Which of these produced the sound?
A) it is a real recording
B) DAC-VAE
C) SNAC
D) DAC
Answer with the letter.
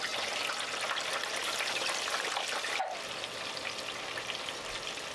A